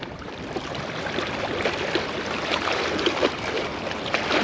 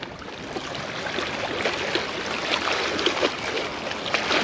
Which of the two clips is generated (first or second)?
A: first